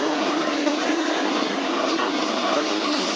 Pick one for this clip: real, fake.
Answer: fake